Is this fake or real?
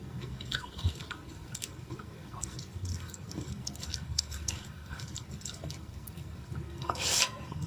fake